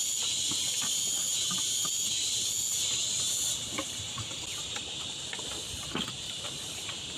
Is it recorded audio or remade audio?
recorded